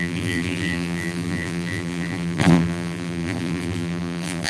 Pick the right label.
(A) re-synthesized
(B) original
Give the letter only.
A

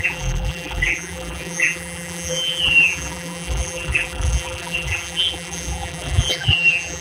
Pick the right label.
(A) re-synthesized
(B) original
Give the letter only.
A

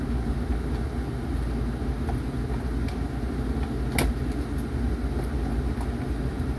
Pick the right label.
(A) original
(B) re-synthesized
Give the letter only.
A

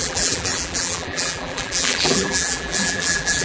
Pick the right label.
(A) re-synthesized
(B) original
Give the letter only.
A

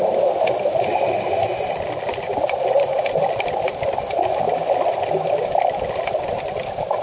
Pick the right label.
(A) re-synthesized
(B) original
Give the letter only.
B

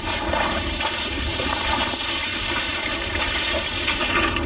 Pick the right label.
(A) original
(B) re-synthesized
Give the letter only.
B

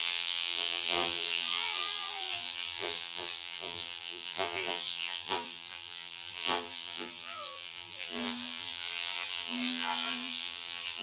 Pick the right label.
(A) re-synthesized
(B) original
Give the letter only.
A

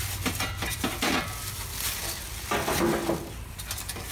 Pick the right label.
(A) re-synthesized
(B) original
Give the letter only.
B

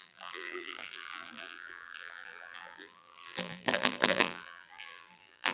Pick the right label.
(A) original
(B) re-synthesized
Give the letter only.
B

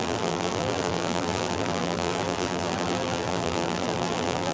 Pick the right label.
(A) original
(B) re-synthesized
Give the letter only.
B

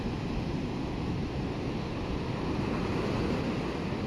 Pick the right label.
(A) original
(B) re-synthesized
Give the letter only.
A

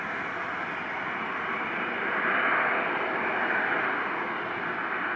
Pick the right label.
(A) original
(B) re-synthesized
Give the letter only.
A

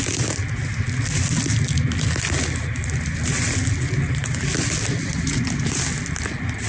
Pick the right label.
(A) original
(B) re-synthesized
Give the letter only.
A